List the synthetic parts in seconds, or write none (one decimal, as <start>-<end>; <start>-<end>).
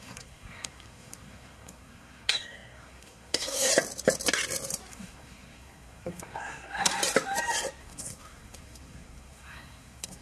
0.0-3.7; 4.9-6.9; 7.8-10.2